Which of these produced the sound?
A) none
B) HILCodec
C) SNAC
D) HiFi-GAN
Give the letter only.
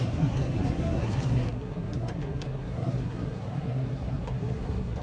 C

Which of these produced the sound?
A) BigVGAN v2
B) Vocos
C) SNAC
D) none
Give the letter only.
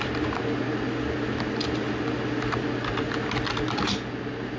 D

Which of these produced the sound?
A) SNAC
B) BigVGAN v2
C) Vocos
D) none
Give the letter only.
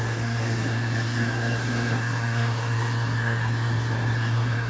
A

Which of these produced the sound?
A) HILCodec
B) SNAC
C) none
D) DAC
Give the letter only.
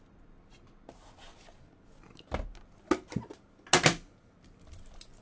C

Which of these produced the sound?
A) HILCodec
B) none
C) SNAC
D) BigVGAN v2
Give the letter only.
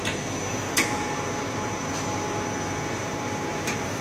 B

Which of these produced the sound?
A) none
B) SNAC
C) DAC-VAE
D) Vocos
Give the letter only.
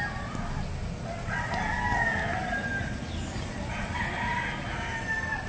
A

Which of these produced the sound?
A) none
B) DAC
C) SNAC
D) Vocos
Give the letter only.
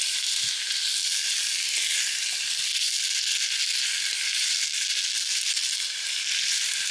A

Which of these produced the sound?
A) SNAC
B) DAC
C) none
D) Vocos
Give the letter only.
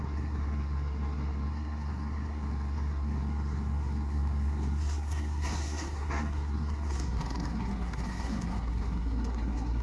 A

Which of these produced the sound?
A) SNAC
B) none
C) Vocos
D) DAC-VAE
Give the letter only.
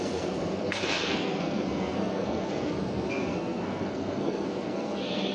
A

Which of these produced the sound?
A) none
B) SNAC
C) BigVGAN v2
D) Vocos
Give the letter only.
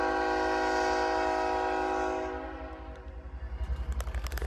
A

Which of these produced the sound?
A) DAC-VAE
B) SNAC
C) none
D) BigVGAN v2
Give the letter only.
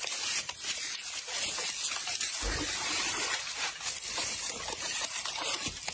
C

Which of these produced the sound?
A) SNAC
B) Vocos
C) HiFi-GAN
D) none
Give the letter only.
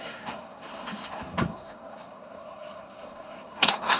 A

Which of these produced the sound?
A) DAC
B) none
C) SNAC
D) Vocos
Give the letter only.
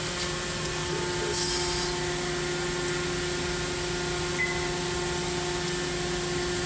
B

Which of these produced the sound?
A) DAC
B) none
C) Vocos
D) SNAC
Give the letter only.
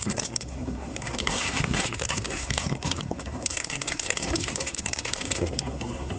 D